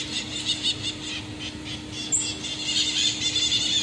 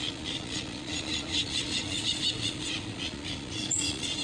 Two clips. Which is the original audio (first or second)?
first